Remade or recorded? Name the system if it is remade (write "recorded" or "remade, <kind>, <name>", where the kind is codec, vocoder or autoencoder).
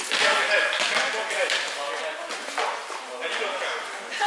recorded